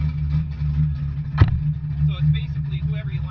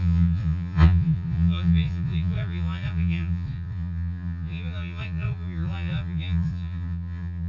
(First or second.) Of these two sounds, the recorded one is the first